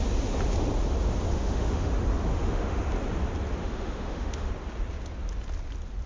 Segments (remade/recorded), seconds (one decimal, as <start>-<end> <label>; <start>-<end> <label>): 0.0-1.3 recorded; 1.3-1.9 remade; 1.9-2.3 recorded; 2.3-2.9 remade; 2.9-3.6 recorded; 3.6-4.5 remade; 4.5-6.1 recorded